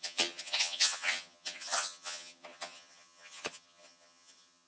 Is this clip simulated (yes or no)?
yes